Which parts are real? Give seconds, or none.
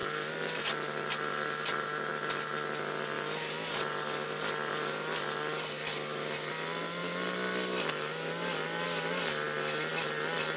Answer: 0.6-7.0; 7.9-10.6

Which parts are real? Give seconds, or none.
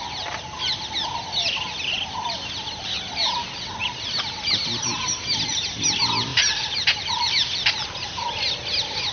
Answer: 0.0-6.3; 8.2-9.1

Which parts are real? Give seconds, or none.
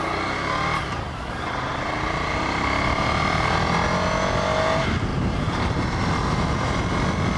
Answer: 0.0-1.7; 2.4-5.1; 6.0-7.4